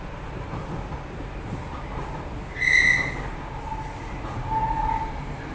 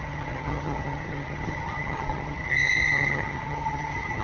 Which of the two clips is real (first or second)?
first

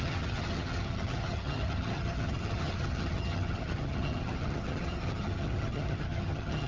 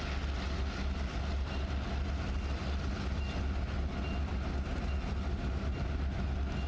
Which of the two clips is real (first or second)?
second